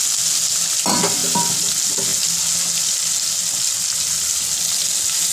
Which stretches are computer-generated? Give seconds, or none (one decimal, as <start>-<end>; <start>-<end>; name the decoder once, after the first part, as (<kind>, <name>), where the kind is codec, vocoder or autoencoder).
1.2-1.7 (vocoder, BigVGAN v2)